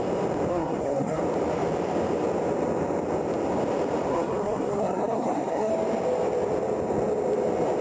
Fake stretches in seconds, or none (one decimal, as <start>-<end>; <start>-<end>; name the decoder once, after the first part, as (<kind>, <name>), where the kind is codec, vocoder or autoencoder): 0.5-1.2 (codec, SNAC); 4.1-5.7